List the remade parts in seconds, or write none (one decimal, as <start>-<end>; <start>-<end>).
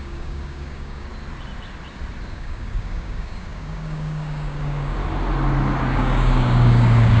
0.0-1.1; 2.3-5.0; 5.9-7.2